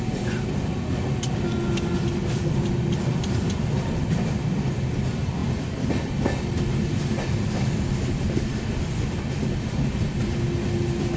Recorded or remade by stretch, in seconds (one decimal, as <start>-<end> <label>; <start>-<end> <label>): 0.0-11.2 recorded